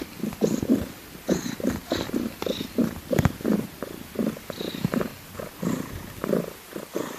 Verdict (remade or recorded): recorded